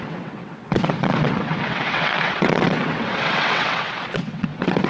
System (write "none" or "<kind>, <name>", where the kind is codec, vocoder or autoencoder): vocoder, WaveNeXt